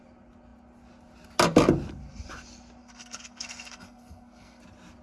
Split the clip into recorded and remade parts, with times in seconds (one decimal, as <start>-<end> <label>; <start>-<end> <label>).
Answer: 0.0-2.8 recorded; 2.8-4.6 remade; 4.6-5.0 recorded